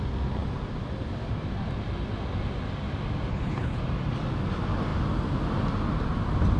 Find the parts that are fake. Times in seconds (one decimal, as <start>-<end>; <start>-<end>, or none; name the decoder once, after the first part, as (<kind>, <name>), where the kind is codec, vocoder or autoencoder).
3.3-3.8 (codec, HILCodec)